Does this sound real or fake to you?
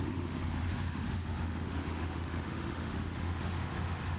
fake